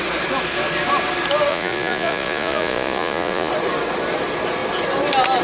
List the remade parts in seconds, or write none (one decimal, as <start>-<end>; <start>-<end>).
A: 1.5-3.5